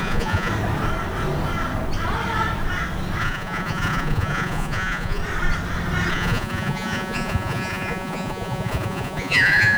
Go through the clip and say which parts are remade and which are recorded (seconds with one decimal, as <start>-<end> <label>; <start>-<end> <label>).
0.0-0.5 remade; 0.5-3.2 recorded; 3.2-5.2 remade; 5.2-6.1 recorded; 6.1-9.8 remade